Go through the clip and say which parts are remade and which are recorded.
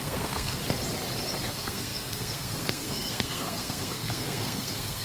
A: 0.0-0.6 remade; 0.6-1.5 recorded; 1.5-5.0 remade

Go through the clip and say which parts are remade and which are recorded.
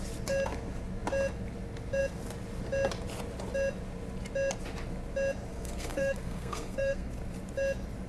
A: 0.0-5.5 recorded; 5.5-7.1 remade; 7.1-8.1 recorded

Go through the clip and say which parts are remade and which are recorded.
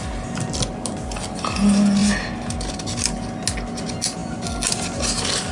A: 0.0-5.5 recorded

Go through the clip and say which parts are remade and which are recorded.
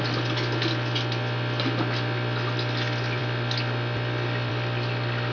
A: 0.0-5.3 recorded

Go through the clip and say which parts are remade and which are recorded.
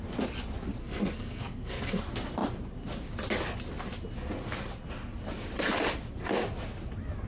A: 0.0-0.8 recorded; 0.8-2.0 remade; 2.0-7.3 recorded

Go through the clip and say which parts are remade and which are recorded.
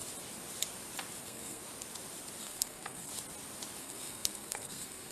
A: 0.0-1.2 recorded; 1.2-1.6 remade; 1.6-2.4 recorded; 2.4-3.1 remade; 3.1-3.8 recorded; 3.8-5.1 remade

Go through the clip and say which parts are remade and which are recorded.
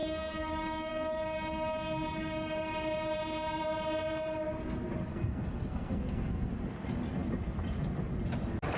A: 0.0-0.5 remade; 0.5-5.1 recorded; 5.1-6.5 remade; 6.5-8.8 recorded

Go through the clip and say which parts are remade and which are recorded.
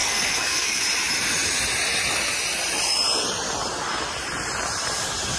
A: 0.0-0.8 remade; 0.8-5.4 recorded